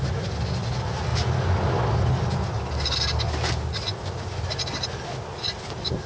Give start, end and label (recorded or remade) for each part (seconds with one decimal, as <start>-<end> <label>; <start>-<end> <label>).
0.0-6.1 recorded